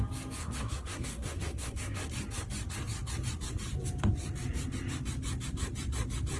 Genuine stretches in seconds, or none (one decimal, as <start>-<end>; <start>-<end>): 0.0-0.4; 2.1-6.4